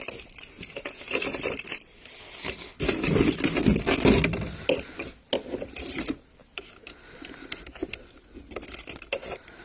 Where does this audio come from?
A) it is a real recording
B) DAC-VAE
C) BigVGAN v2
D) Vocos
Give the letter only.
A